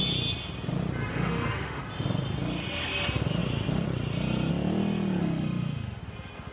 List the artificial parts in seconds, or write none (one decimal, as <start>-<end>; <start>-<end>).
1.1-1.8; 5.2-6.0